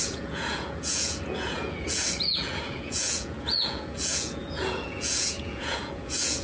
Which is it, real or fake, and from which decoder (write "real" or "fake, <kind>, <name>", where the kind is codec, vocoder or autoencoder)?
fake, vocoder, Vocos